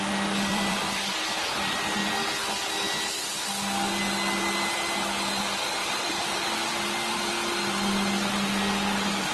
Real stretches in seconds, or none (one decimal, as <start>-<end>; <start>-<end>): 0.0-0.5; 1.1-5.8; 6.3-9.3